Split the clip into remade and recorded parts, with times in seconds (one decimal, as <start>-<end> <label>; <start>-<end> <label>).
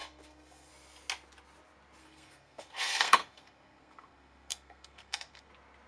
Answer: 0.0-0.7 remade; 0.7-2.0 recorded; 2.0-5.5 remade; 5.5-5.9 recorded